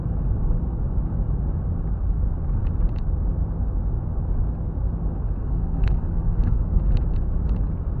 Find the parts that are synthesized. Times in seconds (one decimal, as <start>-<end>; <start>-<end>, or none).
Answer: 5.4-6.8